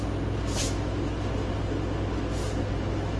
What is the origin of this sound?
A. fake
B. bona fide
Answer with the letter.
B